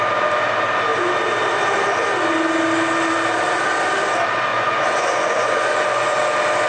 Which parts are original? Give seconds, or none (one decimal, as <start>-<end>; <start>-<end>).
0.0-4.5; 6.2-6.7